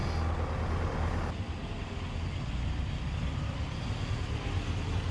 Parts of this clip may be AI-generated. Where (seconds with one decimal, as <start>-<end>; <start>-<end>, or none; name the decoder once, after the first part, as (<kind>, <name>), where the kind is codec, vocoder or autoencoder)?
none